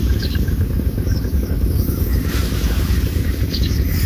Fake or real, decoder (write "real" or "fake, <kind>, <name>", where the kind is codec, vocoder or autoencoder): fake, codec, DAC